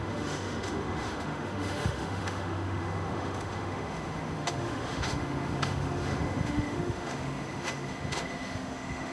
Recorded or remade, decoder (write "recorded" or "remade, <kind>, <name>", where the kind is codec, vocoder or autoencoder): remade, autoencoder, DAC-VAE